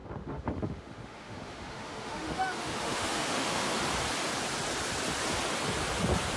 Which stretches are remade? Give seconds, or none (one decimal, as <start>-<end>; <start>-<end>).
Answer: 0.0-3.8